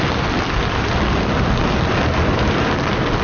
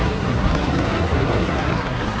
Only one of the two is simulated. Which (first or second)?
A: second